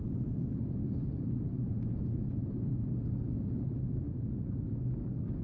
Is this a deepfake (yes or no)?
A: no